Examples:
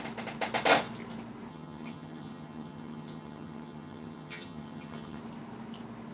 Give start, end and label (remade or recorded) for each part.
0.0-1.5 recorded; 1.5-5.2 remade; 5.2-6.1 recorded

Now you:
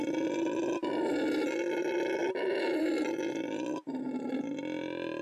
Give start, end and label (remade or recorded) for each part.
0.0-5.2 recorded

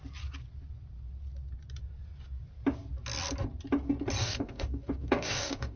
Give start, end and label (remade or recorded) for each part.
0.0-4.2 recorded; 4.2-5.8 remade

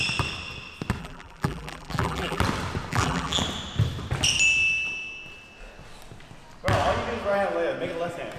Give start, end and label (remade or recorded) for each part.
0.0-1.0 recorded; 1.0-2.4 remade; 2.4-2.9 recorded; 2.9-3.4 remade; 3.4-8.4 recorded

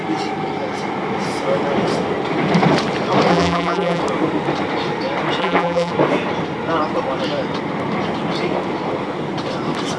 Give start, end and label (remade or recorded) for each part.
0.0-3.3 recorded; 3.3-4.0 remade; 4.0-5.4 recorded; 5.4-5.9 remade; 5.9-10.0 recorded

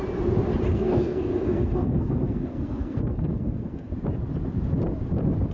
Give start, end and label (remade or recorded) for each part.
0.0-0.7 recorded; 0.7-3.9 remade; 3.9-5.5 recorded